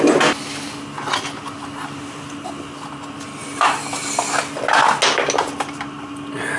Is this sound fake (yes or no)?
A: no